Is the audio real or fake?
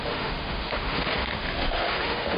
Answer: fake